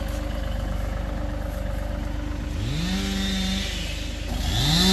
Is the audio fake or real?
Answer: real